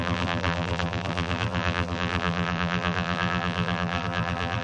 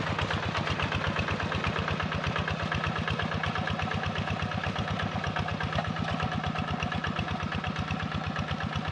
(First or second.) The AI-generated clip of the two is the first